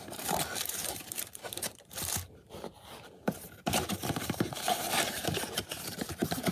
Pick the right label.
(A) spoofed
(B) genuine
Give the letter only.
A